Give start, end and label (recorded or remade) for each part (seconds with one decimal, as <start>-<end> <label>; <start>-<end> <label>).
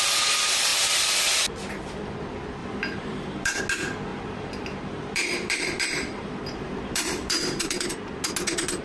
0.0-2.6 recorded; 2.6-3.6 remade; 3.6-4.1 recorded; 4.1-7.9 remade; 7.9-8.8 recorded